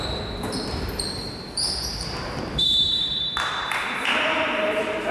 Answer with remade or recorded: remade